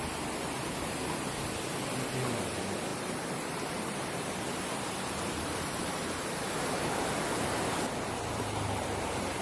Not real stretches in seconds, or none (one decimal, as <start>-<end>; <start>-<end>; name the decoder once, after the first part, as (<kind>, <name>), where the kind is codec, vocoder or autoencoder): 2.9-6.3 (vocoder, BigVGAN v2)